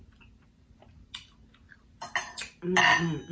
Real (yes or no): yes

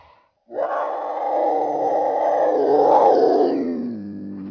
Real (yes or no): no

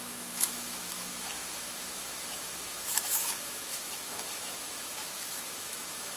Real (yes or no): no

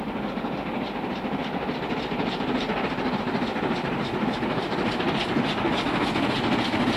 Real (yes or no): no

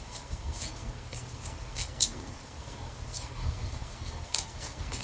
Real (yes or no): no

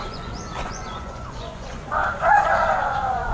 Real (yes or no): no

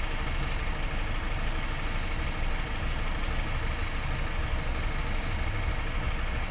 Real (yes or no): yes